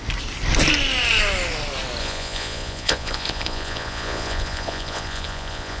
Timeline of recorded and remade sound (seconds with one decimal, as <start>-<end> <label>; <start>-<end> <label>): 0.0-2.0 recorded; 2.0-5.8 remade